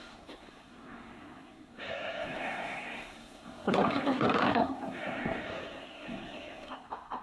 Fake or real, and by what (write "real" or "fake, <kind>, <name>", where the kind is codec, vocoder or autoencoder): fake, codec, SNAC